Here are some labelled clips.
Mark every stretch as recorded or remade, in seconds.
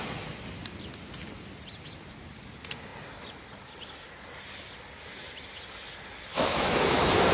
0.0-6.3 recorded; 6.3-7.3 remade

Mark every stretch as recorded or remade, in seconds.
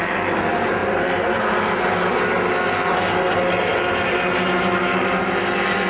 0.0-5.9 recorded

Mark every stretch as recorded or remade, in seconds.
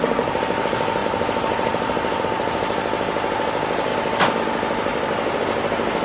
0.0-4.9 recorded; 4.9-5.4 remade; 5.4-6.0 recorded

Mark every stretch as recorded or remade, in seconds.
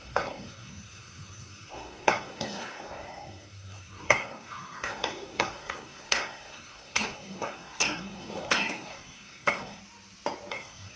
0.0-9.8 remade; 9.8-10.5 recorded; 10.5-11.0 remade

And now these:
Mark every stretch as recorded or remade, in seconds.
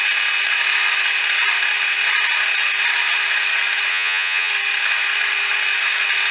0.0-3.9 recorded; 3.9-4.5 remade; 4.5-6.3 recorded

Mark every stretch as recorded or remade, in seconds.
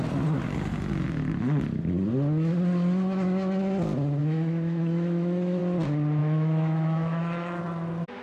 0.0-4.2 recorded; 4.2-5.6 remade; 5.6-6.2 recorded; 6.2-7.6 remade; 7.6-8.2 recorded